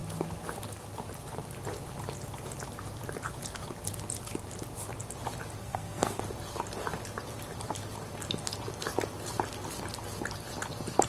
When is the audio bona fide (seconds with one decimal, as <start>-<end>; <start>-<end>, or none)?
0.0-5.6; 6.2-11.1